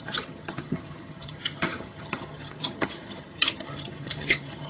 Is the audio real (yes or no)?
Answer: no